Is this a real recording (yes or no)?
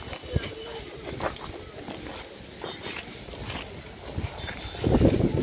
yes